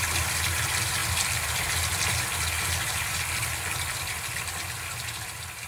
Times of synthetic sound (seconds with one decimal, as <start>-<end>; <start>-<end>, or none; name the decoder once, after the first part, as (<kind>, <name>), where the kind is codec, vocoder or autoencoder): none